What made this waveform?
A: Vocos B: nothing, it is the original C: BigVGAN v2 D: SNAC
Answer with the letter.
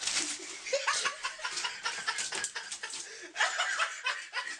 B